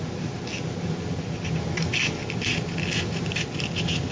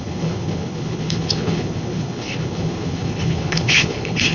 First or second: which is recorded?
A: first